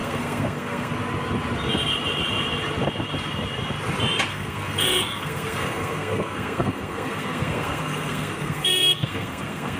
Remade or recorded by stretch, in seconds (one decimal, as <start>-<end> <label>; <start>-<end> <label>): 0.0-0.9 remade; 0.9-4.3 recorded; 4.3-9.8 remade

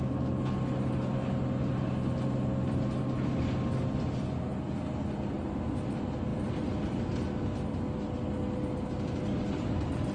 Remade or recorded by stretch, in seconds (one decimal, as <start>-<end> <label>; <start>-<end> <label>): 0.0-10.1 recorded

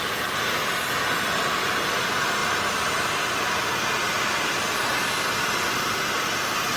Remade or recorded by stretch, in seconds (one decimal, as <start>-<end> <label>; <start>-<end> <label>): 0.0-6.8 recorded

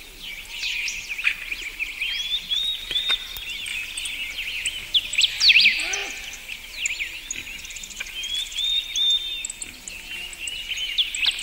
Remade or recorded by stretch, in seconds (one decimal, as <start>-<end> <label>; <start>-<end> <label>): 0.0-3.7 remade; 3.7-5.5 recorded; 5.5-6.0 remade; 6.0-9.7 recorded; 9.7-10.3 remade; 10.3-11.4 recorded

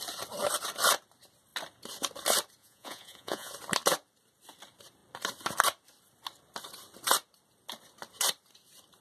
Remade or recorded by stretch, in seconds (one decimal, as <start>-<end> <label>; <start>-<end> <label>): 0.0-2.6 recorded; 2.6-3.5 remade; 3.5-9.0 recorded

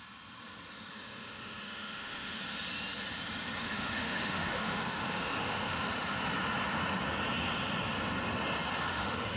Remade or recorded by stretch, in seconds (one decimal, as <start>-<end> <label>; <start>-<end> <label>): 0.0-0.9 recorded; 0.9-2.4 remade; 2.4-3.6 recorded; 3.6-5.9 remade; 5.9-8.9 recorded; 8.9-9.4 remade

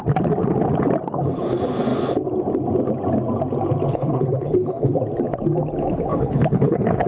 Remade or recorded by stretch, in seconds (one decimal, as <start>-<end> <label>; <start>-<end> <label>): 0.0-3.9 recorded; 3.9-5.0 remade; 5.0-6.1 recorded; 6.1-7.1 remade